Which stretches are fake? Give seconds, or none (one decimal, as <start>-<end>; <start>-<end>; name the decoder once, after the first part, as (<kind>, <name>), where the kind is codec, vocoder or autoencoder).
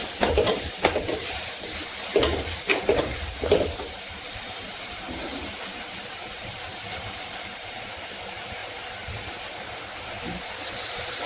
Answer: 0.0-6.7 (vocoder, BigVGAN v2); 8.2-8.6; 10.0-11.3